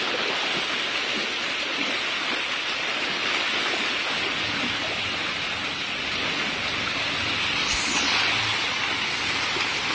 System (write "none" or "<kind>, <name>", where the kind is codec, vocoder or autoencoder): none